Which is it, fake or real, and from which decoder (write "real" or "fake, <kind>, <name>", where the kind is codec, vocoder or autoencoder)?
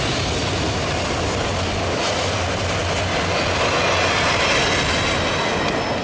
real